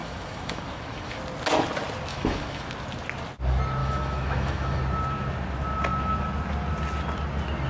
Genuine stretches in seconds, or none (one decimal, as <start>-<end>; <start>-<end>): 1.2-2.1; 2.7-3.8; 4.8-7.7